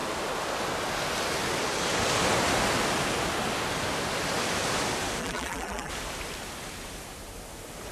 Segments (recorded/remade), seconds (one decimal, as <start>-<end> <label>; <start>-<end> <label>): 0.0-5.2 recorded; 5.2-5.9 remade; 5.9-7.9 recorded